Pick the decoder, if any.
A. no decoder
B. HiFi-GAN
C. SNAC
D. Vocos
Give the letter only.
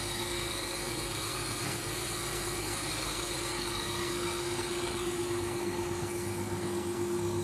C